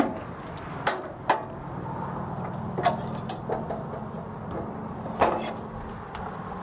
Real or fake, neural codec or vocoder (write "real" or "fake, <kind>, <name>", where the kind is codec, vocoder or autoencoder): real